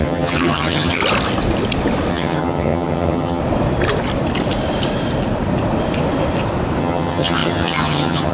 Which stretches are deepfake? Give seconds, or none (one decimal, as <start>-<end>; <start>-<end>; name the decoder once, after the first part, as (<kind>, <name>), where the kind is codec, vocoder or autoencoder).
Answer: 0.0-1.0 (vocoder, HiFi-GAN); 2.1-3.4; 6.8-8.3